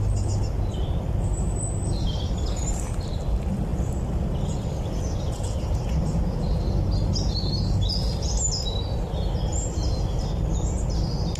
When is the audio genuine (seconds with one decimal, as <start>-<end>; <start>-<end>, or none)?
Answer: 0.0-11.4